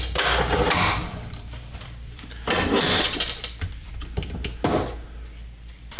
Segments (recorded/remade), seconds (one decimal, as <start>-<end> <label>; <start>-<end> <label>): 0.0-1.0 recorded; 1.0-3.9 remade; 3.9-6.0 recorded